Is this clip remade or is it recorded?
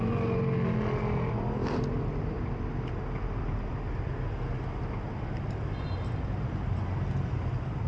recorded